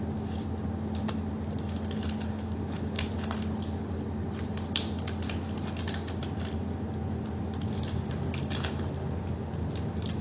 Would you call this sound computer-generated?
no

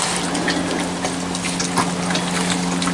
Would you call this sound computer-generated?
no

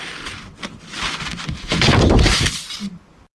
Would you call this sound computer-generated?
no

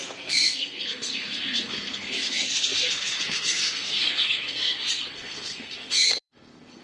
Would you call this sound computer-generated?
yes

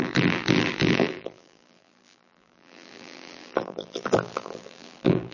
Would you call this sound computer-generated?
yes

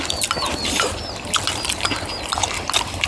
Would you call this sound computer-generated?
no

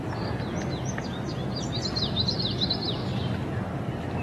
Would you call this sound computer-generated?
no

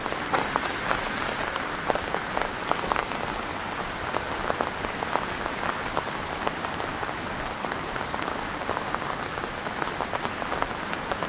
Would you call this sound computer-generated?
no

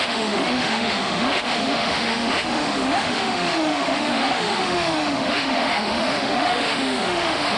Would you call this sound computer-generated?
yes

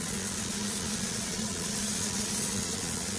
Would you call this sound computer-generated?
yes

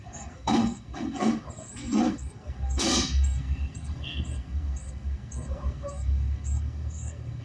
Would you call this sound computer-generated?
yes